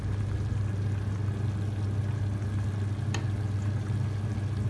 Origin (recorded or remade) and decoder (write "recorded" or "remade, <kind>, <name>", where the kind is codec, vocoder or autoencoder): recorded